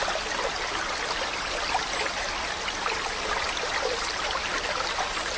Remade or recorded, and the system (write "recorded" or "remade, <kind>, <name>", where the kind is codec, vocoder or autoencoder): recorded